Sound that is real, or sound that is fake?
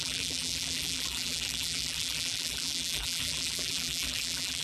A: fake